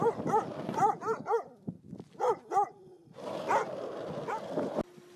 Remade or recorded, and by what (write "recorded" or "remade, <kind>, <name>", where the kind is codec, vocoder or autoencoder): recorded